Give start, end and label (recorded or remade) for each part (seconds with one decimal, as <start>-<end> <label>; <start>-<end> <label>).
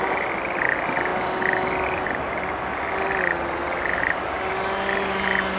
0.0-5.6 recorded